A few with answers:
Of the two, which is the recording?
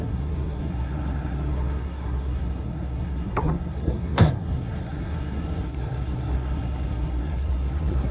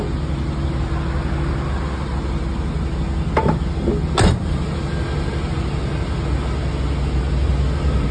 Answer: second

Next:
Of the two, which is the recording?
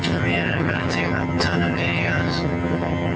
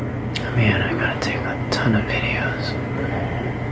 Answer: second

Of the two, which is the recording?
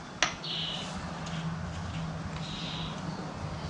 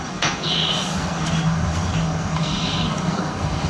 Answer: first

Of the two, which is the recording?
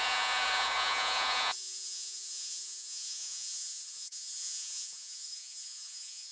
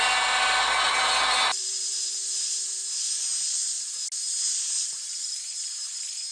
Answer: second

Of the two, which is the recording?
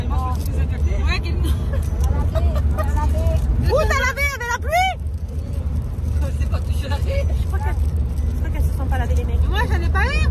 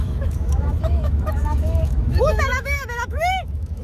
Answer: first